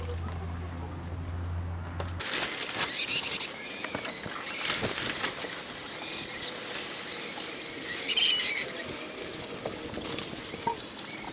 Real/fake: real